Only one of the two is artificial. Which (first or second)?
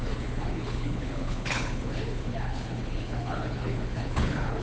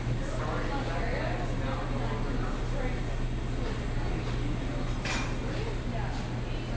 first